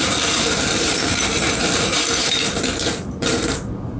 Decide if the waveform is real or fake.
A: fake